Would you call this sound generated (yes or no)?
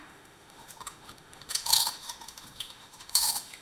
yes